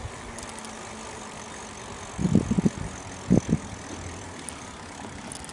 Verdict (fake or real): real